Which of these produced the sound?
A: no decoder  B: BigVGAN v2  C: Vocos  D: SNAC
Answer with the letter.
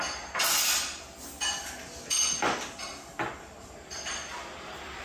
A